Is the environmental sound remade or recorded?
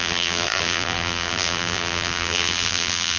remade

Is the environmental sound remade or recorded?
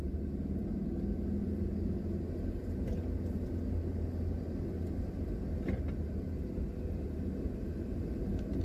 recorded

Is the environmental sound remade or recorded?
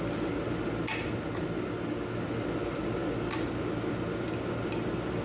recorded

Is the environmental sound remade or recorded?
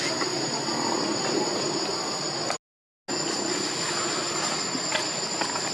recorded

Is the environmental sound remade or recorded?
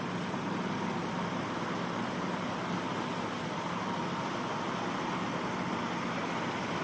recorded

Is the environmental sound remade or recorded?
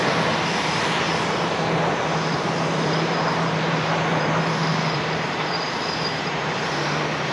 remade